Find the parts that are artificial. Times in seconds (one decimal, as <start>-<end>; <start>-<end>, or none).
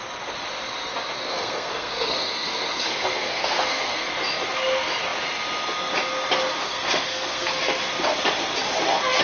1.3-4.1; 6.6-7.8